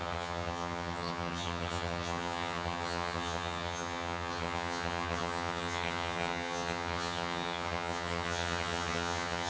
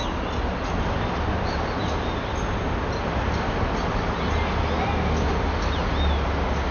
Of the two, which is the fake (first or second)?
first